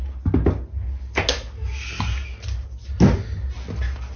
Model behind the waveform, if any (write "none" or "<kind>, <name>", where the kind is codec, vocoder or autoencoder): none